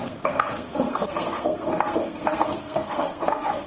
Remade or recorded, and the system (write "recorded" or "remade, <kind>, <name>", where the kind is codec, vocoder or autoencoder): remade, codec, SNAC